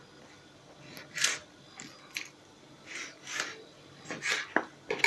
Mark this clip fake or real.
real